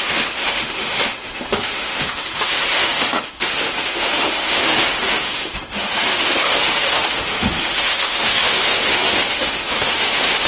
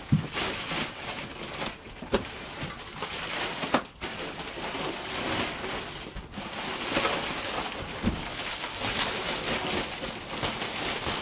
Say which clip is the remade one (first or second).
first